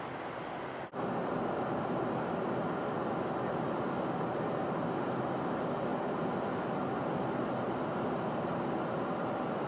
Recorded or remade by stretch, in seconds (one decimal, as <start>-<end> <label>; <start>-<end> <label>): 0.0-9.7 recorded